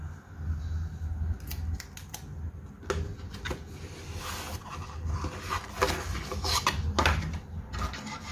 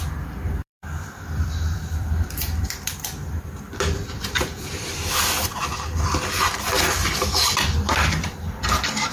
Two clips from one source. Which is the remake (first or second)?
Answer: second